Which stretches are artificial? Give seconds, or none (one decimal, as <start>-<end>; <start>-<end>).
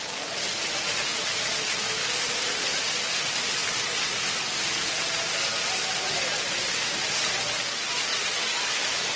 8.1-8.6